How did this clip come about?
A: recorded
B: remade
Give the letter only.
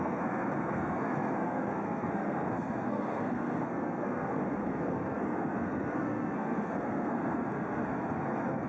B